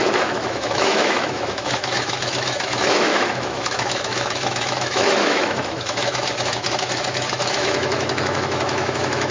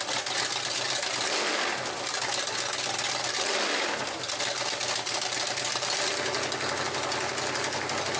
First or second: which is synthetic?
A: first